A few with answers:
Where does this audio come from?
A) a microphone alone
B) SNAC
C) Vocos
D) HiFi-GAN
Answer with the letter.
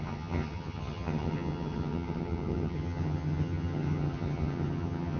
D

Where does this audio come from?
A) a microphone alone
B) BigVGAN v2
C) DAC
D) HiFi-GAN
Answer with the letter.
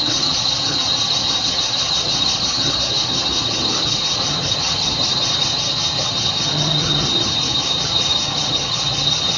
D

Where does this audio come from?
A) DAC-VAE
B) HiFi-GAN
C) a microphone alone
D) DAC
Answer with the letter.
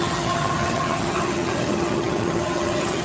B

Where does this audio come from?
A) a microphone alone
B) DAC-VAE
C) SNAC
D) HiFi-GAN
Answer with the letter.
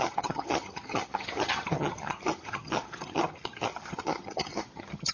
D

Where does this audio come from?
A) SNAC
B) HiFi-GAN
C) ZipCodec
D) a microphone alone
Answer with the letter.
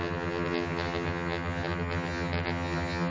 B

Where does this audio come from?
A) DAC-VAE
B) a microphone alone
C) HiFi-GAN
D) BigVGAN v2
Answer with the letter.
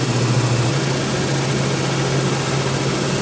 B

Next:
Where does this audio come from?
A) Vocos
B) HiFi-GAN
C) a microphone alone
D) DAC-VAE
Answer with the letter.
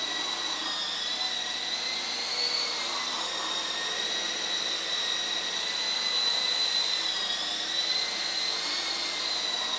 C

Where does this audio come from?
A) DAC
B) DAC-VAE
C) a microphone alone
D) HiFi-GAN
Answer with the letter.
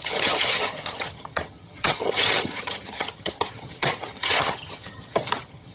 D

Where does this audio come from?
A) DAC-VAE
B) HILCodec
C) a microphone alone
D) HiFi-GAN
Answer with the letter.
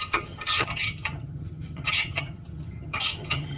D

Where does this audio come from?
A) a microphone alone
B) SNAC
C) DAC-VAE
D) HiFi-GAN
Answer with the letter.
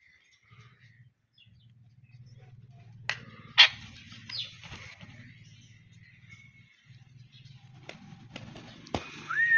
A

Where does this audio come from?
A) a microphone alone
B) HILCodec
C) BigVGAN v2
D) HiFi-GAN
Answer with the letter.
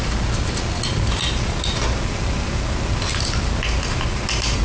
A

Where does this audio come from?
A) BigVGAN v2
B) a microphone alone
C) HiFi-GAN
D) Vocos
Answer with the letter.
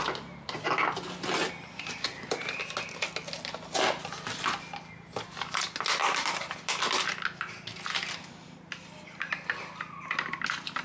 B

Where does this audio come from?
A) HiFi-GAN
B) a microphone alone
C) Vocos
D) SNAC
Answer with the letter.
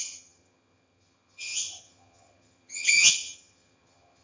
A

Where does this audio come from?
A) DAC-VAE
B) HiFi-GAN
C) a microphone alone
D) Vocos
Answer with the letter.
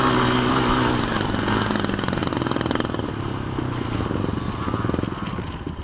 C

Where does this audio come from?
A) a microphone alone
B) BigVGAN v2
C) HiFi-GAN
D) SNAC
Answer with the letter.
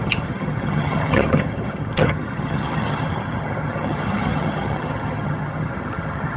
C